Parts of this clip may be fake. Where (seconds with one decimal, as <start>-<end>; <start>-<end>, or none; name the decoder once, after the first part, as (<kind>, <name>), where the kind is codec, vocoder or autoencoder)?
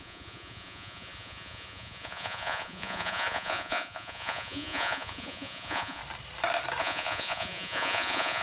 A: 0.0-6.0 (vocoder, Vocos); 6.8-8.4